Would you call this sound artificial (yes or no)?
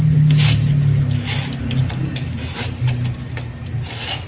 no